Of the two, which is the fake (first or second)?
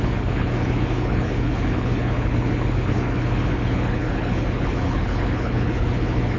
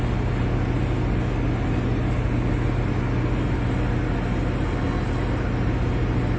first